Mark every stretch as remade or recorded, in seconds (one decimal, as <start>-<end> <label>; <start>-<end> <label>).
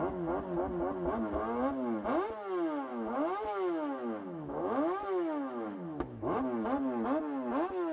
0.0-2.9 recorded; 2.9-6.4 remade; 6.4-7.9 recorded